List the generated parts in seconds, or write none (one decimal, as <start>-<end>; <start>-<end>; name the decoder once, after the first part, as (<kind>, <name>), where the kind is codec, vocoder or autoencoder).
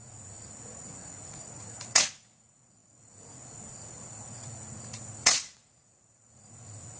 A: 0.0-7.0 (vocoder, Vocos)